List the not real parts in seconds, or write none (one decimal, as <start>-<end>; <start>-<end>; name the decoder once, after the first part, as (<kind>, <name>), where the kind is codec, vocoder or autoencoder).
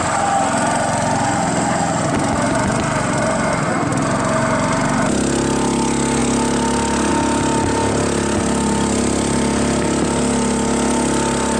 none